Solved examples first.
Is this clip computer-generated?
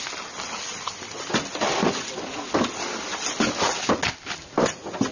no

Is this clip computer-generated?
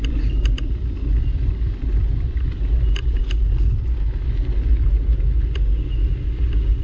no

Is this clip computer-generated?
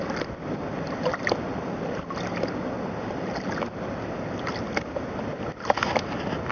no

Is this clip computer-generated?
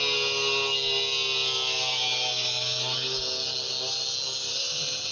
no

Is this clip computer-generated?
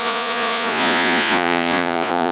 yes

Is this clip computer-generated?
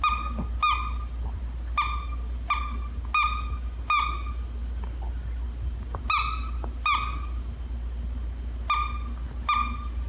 no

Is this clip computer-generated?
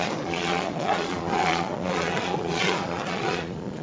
yes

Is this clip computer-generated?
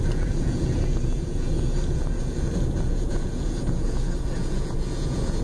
yes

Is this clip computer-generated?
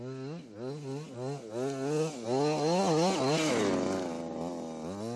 no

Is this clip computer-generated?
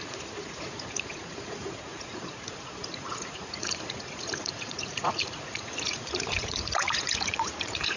yes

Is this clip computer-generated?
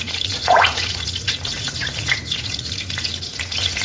yes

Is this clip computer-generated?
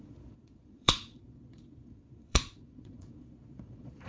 yes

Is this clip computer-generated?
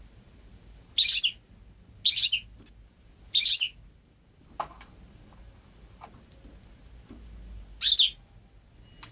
no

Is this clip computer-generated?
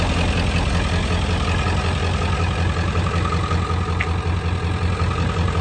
no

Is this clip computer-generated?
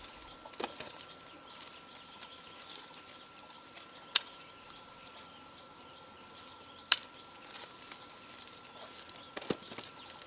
no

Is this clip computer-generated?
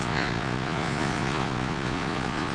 yes